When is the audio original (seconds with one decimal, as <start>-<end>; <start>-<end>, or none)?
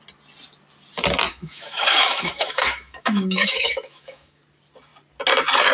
0.0-1.3; 4.4-5.7